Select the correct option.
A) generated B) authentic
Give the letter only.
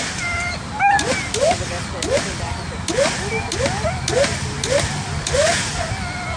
B